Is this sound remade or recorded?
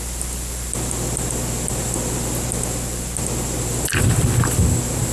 recorded